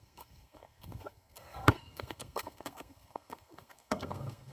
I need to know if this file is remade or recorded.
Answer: remade